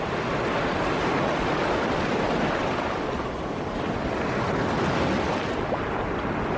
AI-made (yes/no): no